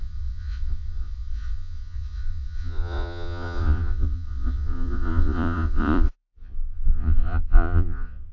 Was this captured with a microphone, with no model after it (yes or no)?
no